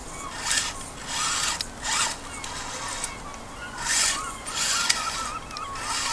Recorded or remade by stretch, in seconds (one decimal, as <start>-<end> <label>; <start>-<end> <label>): 0.0-3.6 recorded; 3.6-5.4 remade; 5.4-6.1 recorded